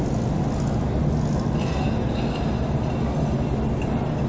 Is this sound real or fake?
real